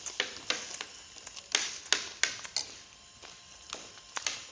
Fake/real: real